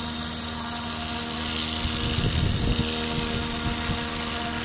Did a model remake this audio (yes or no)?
no